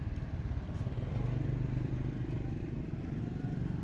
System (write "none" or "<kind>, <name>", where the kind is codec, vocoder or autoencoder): vocoder, BigVGAN v2